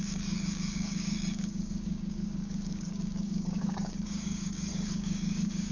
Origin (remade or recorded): remade